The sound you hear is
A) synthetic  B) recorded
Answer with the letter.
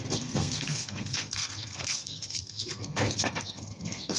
A